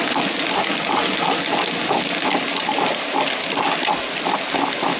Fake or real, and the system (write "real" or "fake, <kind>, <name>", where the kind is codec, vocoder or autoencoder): real